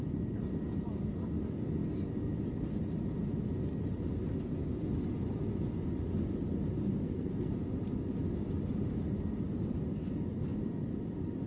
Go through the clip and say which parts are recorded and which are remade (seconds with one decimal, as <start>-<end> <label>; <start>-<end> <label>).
0.0-7.0 recorded; 7.0-7.5 remade; 7.5-11.5 recorded